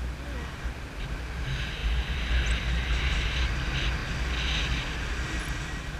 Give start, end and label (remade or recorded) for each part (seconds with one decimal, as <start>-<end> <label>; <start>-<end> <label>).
0.0-6.0 recorded